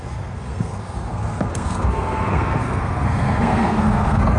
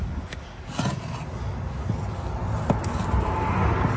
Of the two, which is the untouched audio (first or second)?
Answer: second